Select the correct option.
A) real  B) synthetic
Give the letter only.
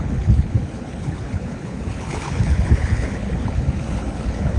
B